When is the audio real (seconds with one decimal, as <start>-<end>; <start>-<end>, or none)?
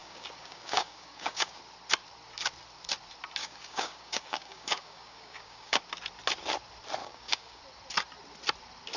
1.6-3.4; 5.8-7.0; 7.6-9.0